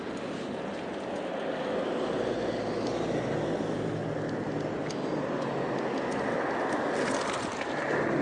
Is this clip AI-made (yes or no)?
no